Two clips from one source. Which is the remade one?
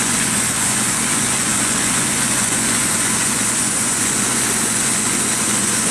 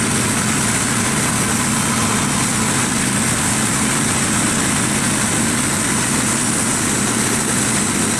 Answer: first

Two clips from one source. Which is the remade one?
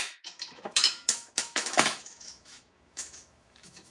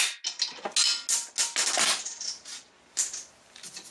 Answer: first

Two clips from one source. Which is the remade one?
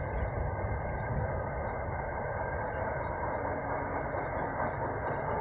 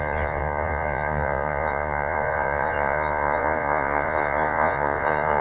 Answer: second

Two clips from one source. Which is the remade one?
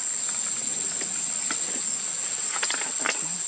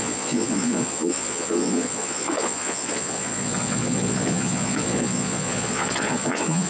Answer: second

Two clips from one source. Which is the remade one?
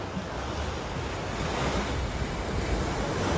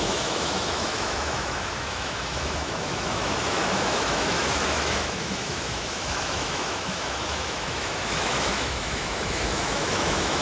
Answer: second